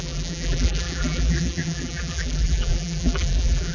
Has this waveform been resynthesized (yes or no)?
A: yes